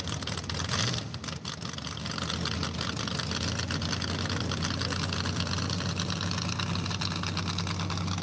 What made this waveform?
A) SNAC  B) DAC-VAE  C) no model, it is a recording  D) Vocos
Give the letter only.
C